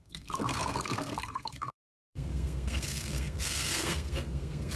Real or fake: fake